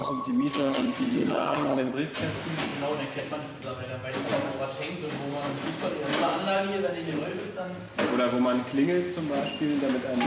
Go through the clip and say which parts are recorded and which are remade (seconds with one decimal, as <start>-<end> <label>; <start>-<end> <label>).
0.0-1.9 remade; 1.9-10.3 recorded